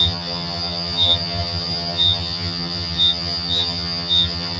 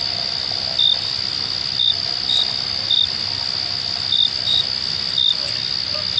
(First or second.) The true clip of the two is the second